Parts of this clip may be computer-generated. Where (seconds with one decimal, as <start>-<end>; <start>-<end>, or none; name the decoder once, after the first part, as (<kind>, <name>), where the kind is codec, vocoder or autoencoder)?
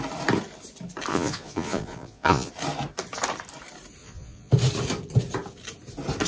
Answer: 1.1-2.5 (vocoder, Vocos); 4.0-4.5